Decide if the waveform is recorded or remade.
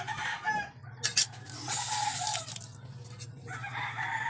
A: recorded